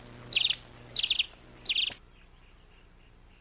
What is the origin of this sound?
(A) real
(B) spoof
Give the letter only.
A